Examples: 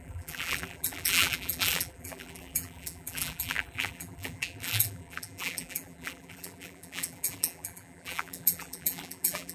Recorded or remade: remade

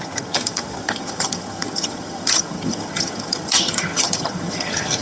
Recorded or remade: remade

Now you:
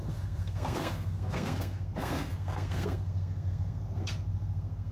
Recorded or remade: remade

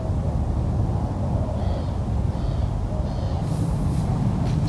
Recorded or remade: recorded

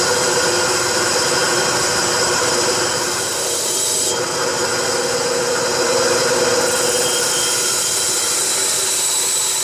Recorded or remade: recorded